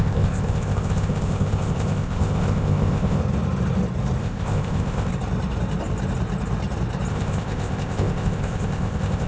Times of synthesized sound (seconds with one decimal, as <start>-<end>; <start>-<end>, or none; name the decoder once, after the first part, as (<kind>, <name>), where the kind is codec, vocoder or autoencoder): 0.0-3.2 (codec, ZipCodec); 4.2-5.1; 7.1-9.3